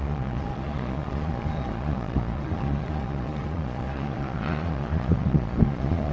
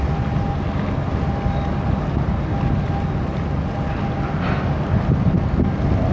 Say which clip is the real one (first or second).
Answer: second